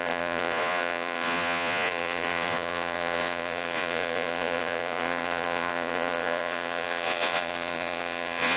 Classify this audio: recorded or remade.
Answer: remade